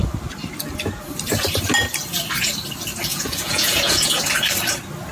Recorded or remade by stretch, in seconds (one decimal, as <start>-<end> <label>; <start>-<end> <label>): 0.0-3.1 recorded; 3.1-4.2 remade; 4.2-5.1 recorded